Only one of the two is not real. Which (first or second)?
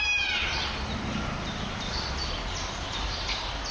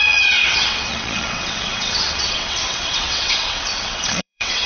second